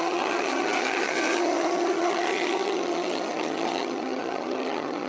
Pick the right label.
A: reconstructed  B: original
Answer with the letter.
A